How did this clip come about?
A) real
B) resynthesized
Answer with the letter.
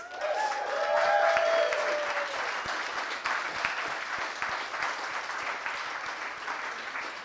A